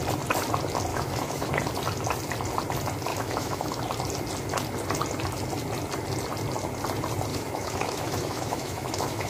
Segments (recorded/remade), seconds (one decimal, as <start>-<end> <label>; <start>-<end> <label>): 0.0-0.9 recorded; 0.9-1.5 remade; 1.5-3.1 recorded; 3.1-3.8 remade; 3.8-7.3 recorded; 7.3-9.3 remade